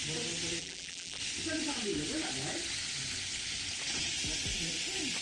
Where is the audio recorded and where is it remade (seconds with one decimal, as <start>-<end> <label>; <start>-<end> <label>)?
0.0-0.6 recorded; 0.6-1.2 remade; 1.2-5.2 recorded